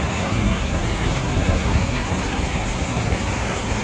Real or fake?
fake